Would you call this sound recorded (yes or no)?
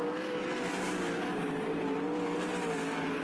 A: yes